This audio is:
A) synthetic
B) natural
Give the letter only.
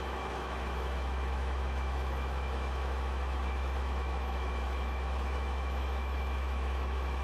A